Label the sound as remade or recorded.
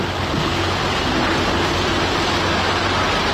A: recorded